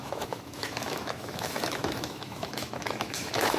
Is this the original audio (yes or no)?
no